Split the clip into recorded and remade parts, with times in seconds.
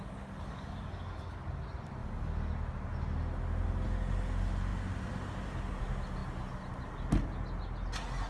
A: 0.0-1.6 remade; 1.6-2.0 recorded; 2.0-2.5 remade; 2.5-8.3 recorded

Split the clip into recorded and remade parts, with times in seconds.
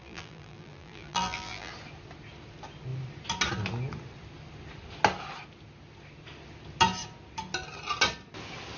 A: 0.0-1.7 remade; 1.7-8.8 recorded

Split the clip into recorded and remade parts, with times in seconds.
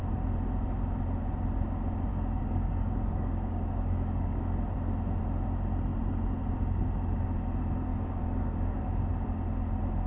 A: 0.0-2.1 recorded; 2.1-4.4 remade; 4.4-7.9 recorded; 7.9-9.0 remade; 9.0-10.1 recorded